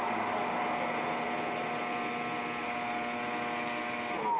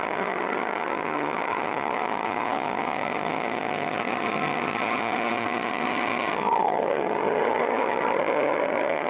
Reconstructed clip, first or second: second